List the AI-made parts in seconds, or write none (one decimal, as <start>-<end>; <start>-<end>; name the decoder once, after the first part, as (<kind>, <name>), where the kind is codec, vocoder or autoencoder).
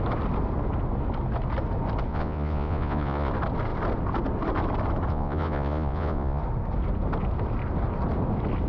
2.1-3.3 (vocoder, Vocos); 5.1-6.4